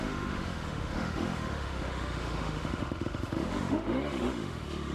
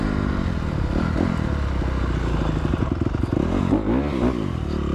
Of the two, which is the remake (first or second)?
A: first